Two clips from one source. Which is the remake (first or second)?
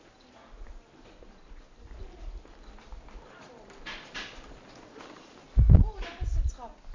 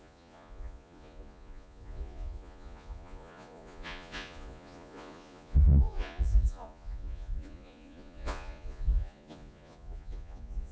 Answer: second